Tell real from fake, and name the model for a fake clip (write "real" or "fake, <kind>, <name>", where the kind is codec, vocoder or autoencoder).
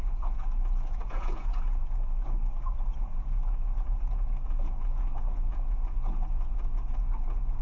fake, vocoder, Vocos